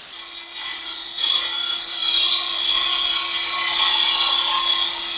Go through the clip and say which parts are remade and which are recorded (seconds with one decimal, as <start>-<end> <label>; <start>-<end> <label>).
0.0-0.7 recorded; 0.7-1.4 remade; 1.4-5.2 recorded